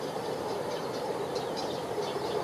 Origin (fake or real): fake